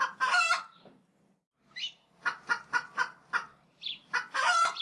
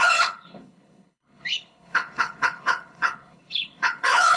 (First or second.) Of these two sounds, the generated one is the second